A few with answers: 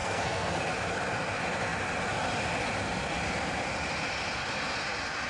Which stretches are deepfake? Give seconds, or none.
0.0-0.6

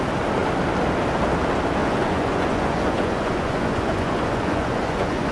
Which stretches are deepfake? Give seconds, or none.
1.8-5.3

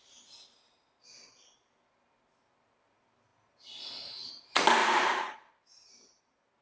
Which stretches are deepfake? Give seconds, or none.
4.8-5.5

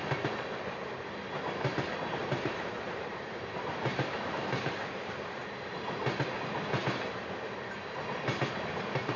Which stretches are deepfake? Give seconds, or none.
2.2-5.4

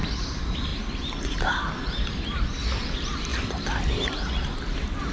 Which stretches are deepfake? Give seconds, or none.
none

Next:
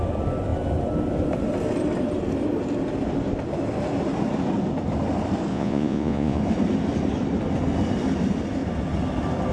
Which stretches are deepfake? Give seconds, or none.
5.5-6.4

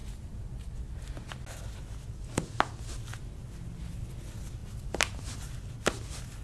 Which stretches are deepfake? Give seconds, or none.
4.6-5.7